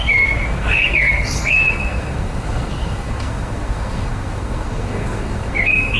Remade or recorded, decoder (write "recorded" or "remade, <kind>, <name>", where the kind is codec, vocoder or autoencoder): remade, codec, SNAC